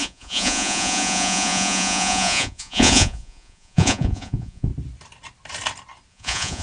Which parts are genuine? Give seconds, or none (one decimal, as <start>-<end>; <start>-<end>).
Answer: 4.7-6.1